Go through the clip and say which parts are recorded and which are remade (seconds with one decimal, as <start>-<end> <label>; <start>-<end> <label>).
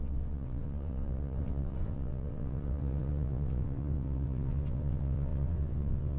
0.0-6.2 remade